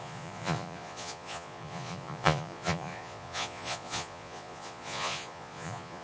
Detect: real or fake fake